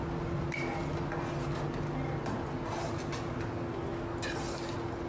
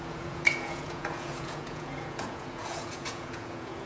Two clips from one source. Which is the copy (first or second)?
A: second